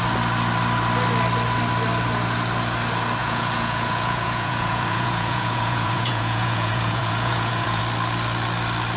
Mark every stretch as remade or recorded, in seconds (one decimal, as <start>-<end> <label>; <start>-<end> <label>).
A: 0.0-3.2 recorded; 3.2-7.8 remade; 7.8-9.0 recorded

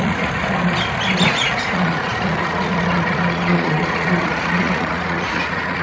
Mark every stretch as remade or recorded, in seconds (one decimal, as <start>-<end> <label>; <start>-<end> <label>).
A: 0.0-0.4 remade; 0.4-1.3 recorded; 1.3-5.8 remade

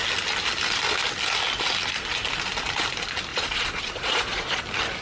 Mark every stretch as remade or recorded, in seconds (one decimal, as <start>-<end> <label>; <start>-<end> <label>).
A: 0.0-3.3 recorded; 3.3-4.6 remade; 4.6-5.0 recorded

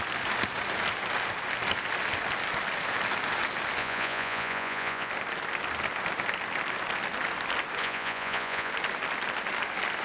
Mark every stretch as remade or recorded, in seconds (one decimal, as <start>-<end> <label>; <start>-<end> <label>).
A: 0.0-3.8 recorded; 3.8-5.1 remade; 5.1-7.8 recorded; 7.8-8.7 remade; 8.7-10.0 recorded